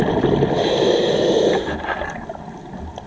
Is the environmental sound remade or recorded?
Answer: remade